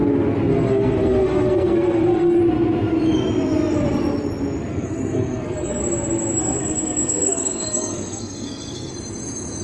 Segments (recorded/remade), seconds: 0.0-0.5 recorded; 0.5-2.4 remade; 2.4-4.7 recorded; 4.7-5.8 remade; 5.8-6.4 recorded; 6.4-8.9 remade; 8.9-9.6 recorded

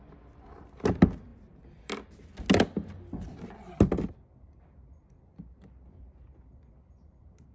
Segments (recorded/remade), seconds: 0.0-7.5 recorded